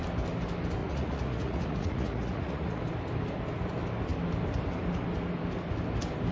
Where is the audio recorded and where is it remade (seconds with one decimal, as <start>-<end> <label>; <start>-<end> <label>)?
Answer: 0.0-0.8 recorded; 0.8-2.8 remade; 2.8-6.3 recorded